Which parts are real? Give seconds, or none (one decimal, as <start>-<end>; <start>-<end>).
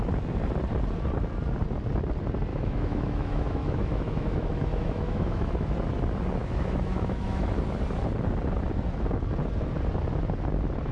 0.0-2.5; 5.5-6.4; 7.5-10.9